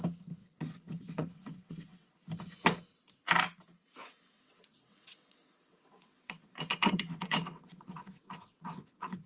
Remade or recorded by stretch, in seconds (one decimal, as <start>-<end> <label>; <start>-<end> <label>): 0.0-0.4 recorded; 0.4-2.1 remade; 2.1-4.0 recorded; 4.0-9.3 remade